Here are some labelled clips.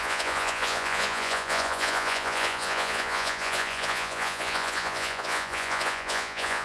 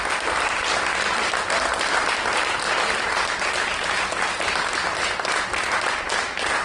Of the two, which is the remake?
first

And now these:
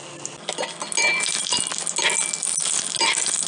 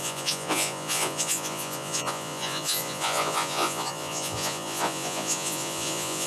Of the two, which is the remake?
second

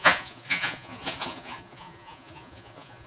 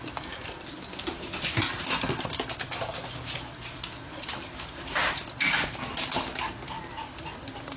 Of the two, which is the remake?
first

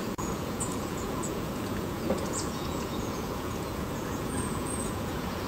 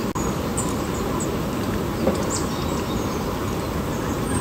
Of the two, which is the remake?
first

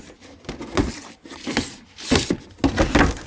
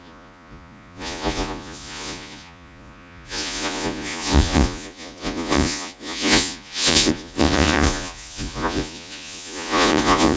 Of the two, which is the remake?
second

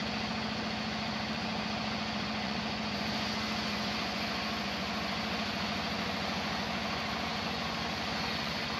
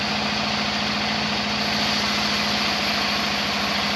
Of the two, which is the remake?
first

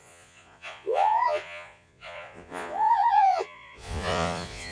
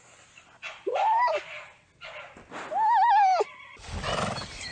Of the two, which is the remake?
first